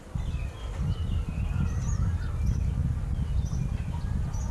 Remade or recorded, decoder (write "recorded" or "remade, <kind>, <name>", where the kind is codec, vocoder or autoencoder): recorded